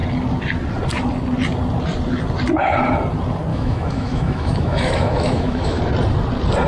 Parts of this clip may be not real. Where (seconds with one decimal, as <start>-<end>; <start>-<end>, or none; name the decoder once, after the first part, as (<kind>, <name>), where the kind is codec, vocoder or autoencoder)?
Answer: 3.5-5.8 (autoencoder, DAC-VAE)